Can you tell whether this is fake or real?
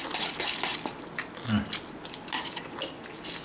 real